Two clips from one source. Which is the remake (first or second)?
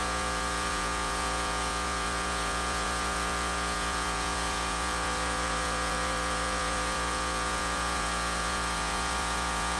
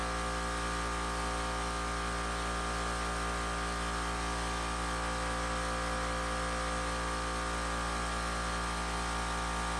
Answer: first